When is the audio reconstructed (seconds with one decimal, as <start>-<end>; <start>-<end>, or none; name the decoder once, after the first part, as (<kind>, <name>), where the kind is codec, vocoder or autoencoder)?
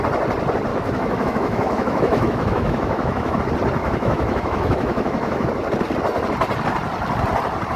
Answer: 0.7-3.4 (autoencoder, DAC-VAE); 3.8-5.5